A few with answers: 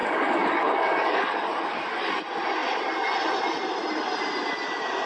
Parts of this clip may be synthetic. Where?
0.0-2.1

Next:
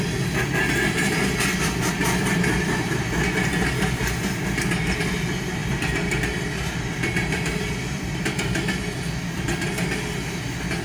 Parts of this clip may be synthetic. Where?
5.6-6.2

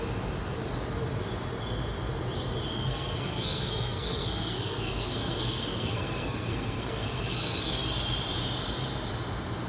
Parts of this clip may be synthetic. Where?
2.7-7.8

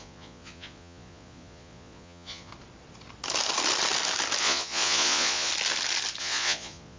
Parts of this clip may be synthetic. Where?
0.0-2.5; 4.4-5.5; 6.2-7.0

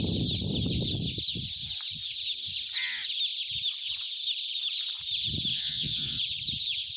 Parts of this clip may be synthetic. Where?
5.5-6.2

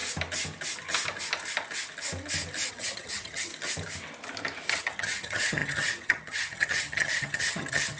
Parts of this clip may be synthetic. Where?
2.7-3.5; 4.7-8.0